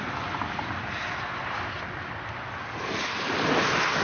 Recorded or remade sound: recorded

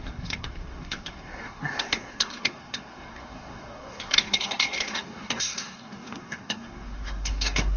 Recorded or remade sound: remade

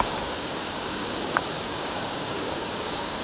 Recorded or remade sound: remade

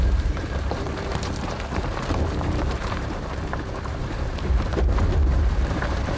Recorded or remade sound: remade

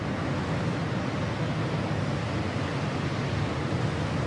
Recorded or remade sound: recorded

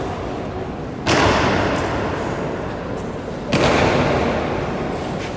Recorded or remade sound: recorded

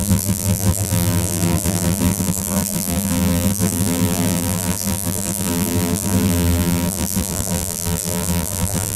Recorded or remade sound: remade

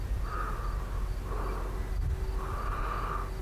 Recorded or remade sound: recorded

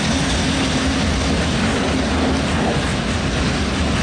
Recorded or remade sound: recorded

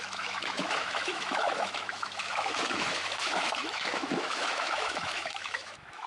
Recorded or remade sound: remade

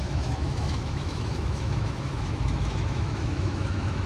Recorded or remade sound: remade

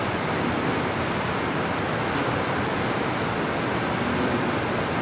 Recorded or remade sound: recorded